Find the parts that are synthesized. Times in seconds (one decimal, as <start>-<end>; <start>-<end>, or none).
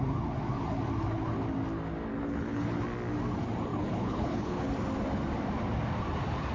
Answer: 2.1-2.8; 3.7-4.6